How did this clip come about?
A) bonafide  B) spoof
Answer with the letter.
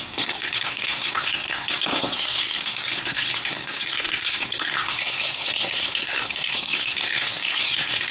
B